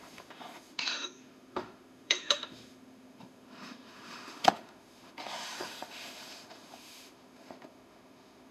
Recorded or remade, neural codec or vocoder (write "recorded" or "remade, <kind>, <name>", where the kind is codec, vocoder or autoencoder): remade, autoencoder, DAC-VAE